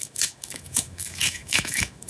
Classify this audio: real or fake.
fake